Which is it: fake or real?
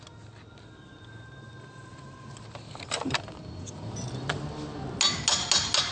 real